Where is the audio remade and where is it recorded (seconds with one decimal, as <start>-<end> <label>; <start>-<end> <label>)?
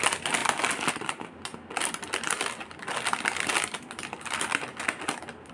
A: 0.0-5.5 recorded